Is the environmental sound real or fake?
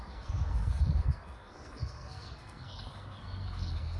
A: fake